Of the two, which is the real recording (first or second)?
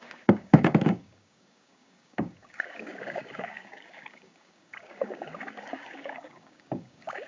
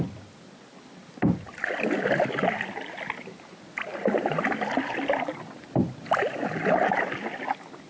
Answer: second